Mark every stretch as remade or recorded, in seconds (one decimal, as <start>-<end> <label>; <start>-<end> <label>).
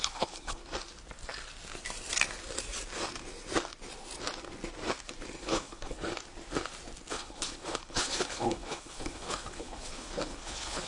0.0-0.6 remade; 0.6-5.4 recorded; 5.4-6.1 remade; 6.1-7.1 recorded; 7.1-10.9 remade